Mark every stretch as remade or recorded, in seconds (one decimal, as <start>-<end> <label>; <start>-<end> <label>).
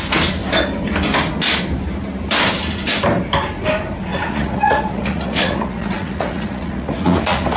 0.0-4.1 recorded; 4.1-7.6 remade